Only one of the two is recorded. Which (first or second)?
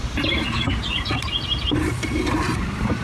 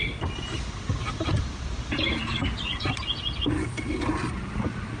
second